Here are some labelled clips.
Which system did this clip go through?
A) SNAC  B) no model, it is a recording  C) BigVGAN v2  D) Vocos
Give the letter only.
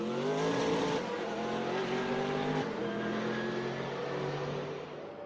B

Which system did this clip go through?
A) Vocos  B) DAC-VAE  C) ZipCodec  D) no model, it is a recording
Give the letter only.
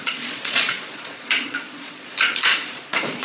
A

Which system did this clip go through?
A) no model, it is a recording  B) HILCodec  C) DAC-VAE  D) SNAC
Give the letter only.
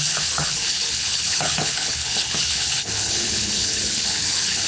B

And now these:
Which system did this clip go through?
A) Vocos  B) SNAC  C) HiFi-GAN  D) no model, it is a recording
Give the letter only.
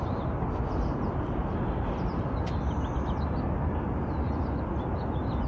D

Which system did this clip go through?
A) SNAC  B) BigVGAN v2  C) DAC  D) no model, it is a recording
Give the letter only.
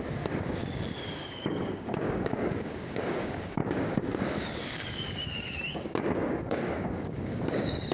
C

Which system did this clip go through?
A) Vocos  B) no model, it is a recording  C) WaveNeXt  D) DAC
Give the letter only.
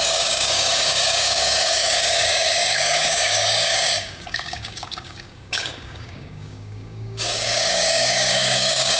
D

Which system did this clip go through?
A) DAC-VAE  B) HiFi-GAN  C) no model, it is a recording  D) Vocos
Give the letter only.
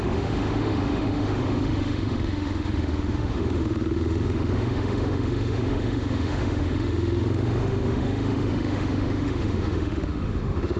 A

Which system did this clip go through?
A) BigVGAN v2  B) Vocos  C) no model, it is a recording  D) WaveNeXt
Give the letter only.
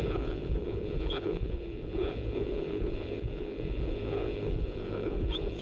B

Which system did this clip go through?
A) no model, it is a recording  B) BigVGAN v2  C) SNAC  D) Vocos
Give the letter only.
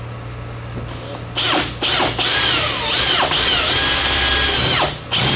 A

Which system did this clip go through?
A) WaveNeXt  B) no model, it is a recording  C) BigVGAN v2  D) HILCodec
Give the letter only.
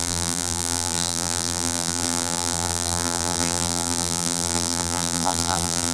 C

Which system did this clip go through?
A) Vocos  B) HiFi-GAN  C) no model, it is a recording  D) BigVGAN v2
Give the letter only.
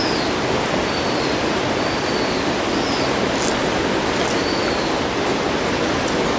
C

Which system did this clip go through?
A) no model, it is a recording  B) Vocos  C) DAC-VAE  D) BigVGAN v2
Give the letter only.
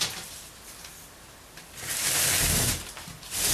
A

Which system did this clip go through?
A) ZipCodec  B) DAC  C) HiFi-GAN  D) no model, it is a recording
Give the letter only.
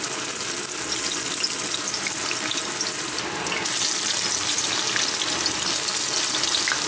D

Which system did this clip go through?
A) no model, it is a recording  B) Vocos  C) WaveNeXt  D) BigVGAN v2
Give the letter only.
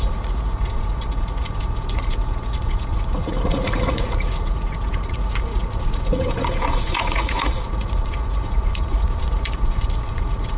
B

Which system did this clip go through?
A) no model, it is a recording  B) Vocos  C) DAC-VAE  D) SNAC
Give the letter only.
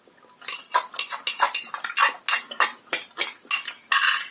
A